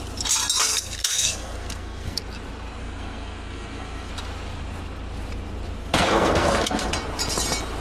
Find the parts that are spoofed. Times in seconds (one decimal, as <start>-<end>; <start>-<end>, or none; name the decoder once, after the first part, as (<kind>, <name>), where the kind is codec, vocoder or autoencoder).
0.6-2.2 (codec, SNAC); 2.8-4.1; 5.8-6.9